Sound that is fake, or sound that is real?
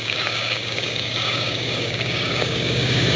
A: fake